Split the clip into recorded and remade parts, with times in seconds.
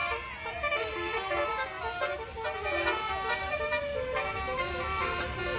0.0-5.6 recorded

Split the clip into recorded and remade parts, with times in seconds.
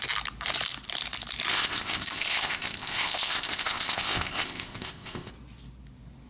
0.0-1.5 recorded; 1.5-5.3 remade; 5.3-6.3 recorded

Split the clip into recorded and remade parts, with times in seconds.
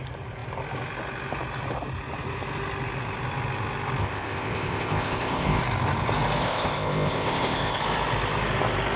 0.0-4.0 recorded; 4.0-5.6 remade; 5.6-6.4 recorded; 6.4-7.8 remade; 7.8-9.0 recorded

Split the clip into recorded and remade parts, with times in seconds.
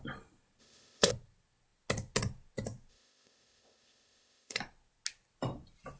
0.0-0.6 recorded; 0.6-1.1 remade; 1.1-2.9 recorded; 2.9-4.6 remade; 4.6-6.0 recorded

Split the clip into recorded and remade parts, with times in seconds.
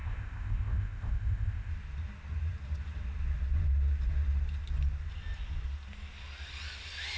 0.0-1.7 remade; 1.7-7.2 recorded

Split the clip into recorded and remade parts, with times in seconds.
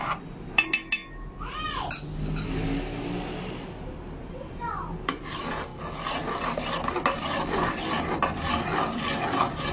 0.0-9.7 recorded